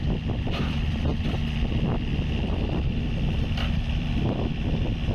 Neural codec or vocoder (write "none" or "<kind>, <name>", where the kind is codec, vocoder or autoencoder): vocoder, BigVGAN v2